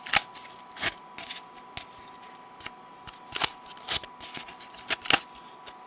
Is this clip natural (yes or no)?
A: yes